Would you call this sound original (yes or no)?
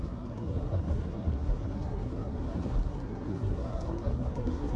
no